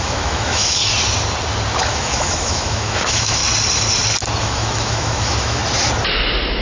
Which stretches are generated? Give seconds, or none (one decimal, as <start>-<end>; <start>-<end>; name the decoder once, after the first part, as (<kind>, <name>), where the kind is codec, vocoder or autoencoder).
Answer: 0.0-0.8 (autoencoder, DAC-VAE); 1.9-3.4; 4.4-5.6